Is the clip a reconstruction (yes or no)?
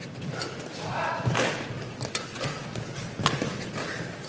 no